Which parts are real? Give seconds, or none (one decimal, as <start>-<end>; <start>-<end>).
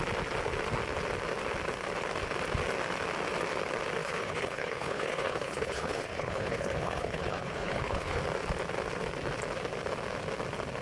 0.0-4.0; 8.2-10.8